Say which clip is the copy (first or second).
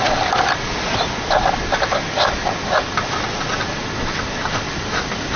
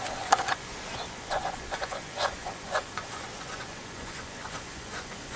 second